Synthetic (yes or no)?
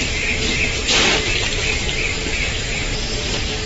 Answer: no